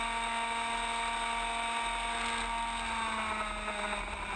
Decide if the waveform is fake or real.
real